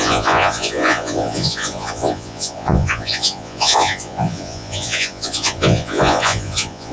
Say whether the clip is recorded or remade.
remade